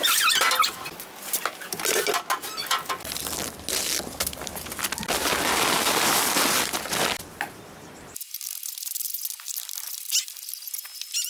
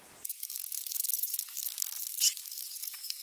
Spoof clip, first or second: second